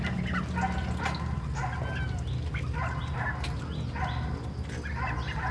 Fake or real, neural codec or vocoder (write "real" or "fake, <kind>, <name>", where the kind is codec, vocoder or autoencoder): real